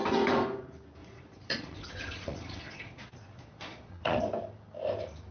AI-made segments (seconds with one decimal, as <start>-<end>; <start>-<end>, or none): 1.0-4.2